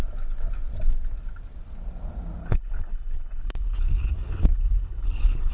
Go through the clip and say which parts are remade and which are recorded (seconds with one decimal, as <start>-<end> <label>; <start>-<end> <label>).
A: 0.0-2.4 recorded; 2.4-5.5 remade